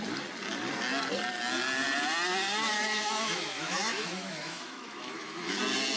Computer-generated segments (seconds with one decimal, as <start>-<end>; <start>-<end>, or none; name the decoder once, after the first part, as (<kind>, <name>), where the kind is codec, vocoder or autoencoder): 2.7-5.6 (autoencoder, DAC-VAE)